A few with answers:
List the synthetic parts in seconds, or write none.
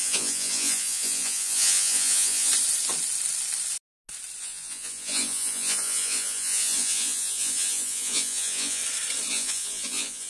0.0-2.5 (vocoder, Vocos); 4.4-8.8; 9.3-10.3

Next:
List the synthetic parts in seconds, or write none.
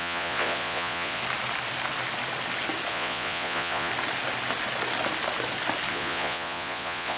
0.0-1.2 (vocoder, Vocos); 2.9-3.9; 5.9-7.2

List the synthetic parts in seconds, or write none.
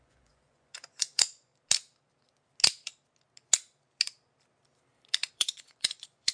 0.0-1.5 (vocoder, Vocos); 5.3-6.3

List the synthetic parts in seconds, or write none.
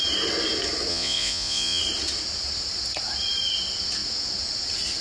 0.9-1.8 (vocoder, Vocos)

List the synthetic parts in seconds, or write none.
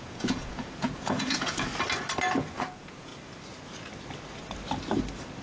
0.0-1.7 (vocoder, Vocos); 2.6-3.1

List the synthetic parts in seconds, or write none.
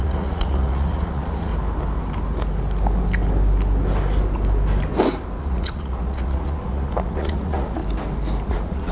0.0-1.5 (vocoder, Vocos); 5.4-7.8; 8.5-8.9